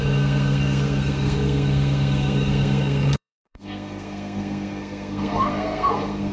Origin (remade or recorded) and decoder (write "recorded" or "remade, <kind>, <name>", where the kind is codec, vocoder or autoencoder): remade, codec, SNAC